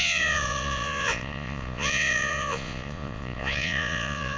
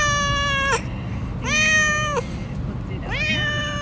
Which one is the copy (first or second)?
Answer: first